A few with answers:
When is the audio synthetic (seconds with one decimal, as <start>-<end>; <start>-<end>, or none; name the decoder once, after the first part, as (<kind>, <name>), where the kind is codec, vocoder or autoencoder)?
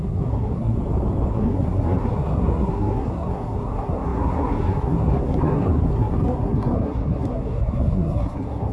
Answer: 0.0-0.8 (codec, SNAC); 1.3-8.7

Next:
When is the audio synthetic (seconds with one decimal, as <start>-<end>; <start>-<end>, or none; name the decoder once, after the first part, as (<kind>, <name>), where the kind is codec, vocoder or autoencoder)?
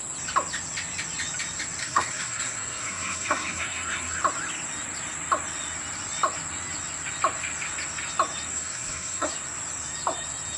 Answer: 1.8-4.2 (codec, SNAC); 8.5-9.3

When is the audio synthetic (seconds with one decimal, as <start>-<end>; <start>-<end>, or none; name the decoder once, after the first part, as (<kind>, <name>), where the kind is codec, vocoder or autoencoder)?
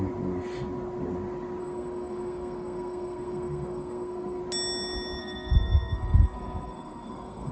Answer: 1.6-4.4 (codec, SNAC); 5.2-7.5